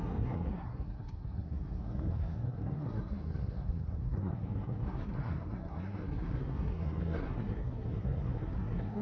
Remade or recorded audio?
remade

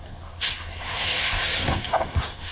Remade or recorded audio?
remade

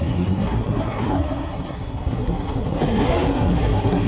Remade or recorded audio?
remade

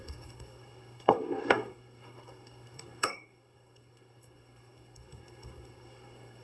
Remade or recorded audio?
remade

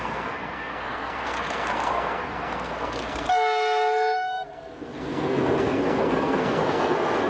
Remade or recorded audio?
remade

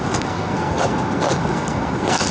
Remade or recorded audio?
remade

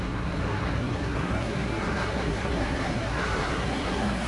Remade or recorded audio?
remade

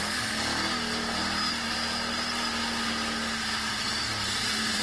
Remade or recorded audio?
recorded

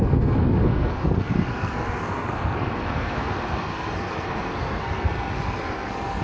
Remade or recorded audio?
remade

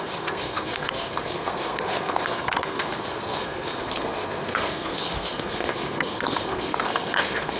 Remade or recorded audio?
remade